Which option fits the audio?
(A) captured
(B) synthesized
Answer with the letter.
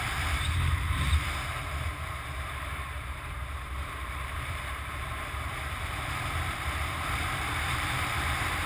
B